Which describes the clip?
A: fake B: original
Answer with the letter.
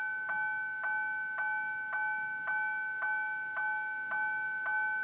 B